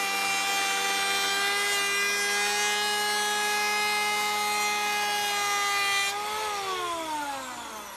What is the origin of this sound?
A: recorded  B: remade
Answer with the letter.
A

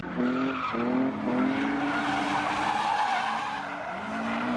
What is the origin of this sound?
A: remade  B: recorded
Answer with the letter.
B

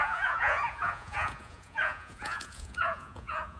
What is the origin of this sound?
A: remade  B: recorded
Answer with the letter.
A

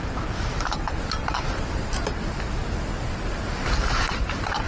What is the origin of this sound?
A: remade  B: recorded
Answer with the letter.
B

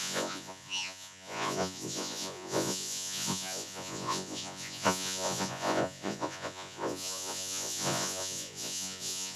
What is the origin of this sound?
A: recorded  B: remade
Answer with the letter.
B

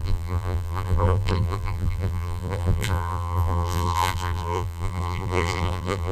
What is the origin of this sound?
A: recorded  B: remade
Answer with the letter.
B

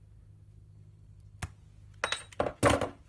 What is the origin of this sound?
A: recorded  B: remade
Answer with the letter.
A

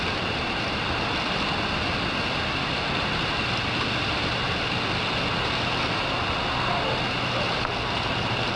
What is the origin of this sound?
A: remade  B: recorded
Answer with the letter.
B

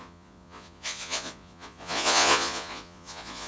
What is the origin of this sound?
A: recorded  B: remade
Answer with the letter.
B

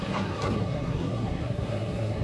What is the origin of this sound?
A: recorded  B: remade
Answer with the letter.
B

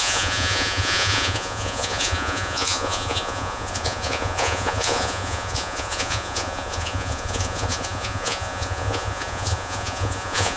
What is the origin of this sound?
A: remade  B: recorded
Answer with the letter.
A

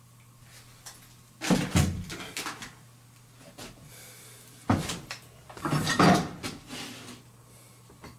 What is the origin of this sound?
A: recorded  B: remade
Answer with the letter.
A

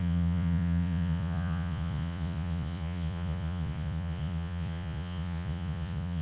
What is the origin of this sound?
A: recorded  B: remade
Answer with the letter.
B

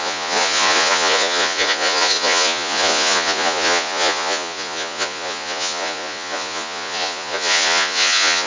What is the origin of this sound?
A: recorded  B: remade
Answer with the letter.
B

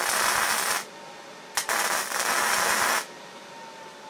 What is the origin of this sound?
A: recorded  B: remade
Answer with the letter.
A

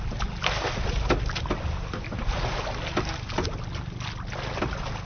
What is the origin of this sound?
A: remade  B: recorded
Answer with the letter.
B